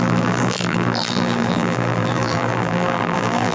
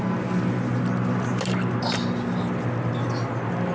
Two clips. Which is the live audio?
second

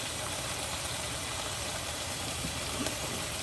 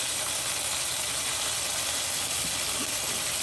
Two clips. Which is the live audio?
second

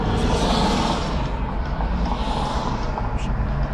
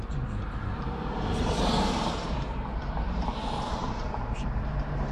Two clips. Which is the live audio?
first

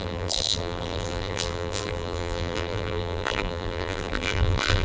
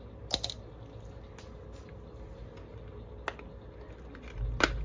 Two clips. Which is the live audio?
second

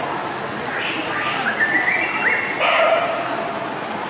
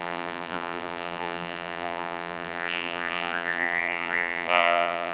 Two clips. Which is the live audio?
first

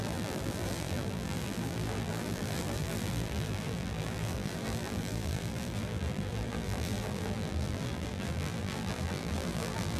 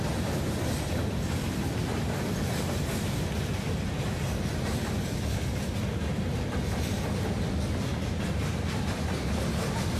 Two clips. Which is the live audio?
second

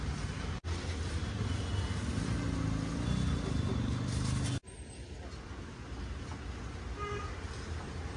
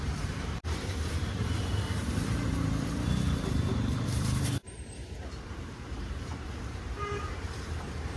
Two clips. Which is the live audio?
first